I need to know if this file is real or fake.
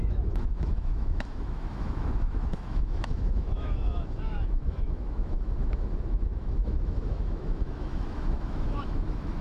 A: fake